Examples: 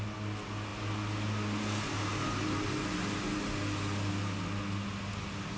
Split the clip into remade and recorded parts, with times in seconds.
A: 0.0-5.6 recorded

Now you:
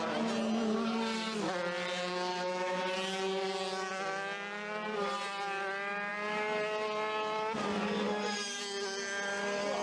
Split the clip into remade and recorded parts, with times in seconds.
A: 0.0-2.3 recorded; 2.3-2.8 remade; 2.8-9.8 recorded